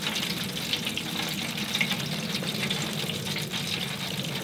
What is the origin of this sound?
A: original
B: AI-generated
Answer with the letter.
A